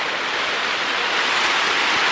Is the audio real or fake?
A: real